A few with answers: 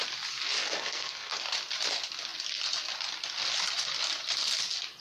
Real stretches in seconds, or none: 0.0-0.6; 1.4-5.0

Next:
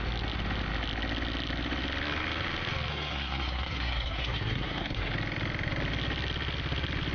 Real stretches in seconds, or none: 0.0-2.9; 5.1-7.1

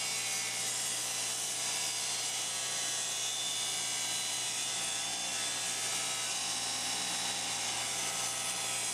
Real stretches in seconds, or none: 0.0-8.9